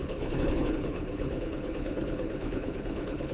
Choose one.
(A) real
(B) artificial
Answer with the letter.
B